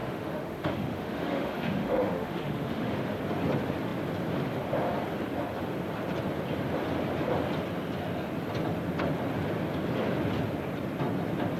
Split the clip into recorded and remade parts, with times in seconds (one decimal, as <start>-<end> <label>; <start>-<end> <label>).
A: 0.0-3.2 remade; 3.2-11.6 recorded